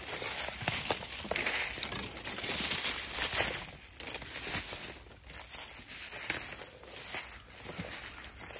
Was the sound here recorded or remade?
recorded